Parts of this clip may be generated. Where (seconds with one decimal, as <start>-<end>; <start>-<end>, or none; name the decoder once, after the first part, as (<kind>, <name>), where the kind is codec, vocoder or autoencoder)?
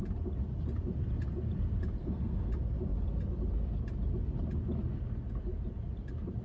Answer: 2.0-2.5 (codec, SNAC)